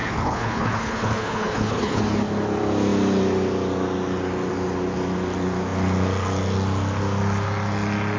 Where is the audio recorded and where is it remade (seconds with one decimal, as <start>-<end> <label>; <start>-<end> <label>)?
0.0-2.0 remade; 2.0-8.2 recorded